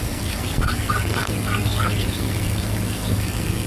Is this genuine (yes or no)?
no